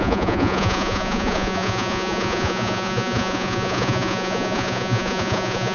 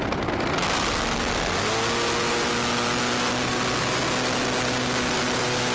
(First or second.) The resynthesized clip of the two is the first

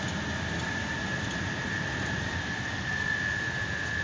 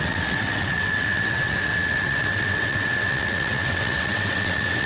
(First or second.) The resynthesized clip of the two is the second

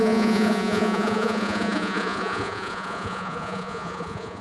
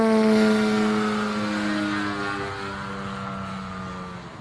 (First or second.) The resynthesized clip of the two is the first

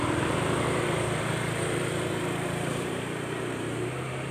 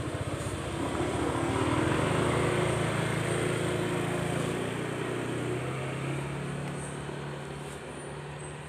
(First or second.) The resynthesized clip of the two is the first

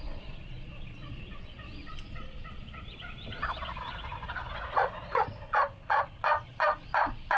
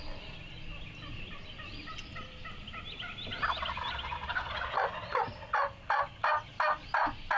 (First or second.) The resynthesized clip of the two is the first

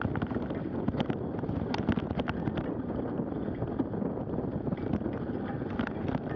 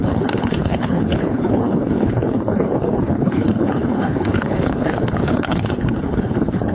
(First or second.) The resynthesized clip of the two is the second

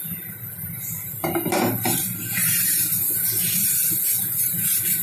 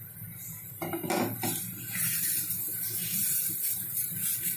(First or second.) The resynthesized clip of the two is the first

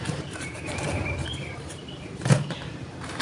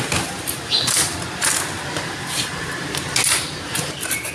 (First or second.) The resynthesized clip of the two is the first